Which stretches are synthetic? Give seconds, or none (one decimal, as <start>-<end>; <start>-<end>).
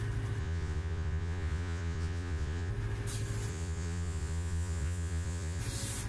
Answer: 0.4-2.7; 3.5-5.6